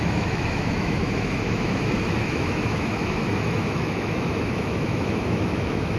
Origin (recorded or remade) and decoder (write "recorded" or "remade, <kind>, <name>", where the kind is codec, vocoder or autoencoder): remade, autoencoder, DAC-VAE